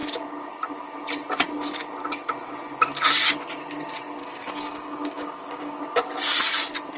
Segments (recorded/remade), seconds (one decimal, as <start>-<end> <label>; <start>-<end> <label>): 0.0-4.2 recorded; 4.2-5.8 remade; 5.8-7.0 recorded